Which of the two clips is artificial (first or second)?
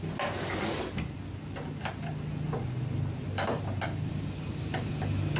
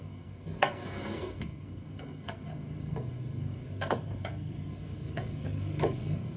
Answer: second